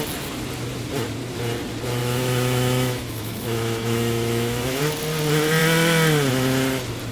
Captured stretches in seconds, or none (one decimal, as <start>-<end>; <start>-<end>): 0.0-2.0; 4.8-7.1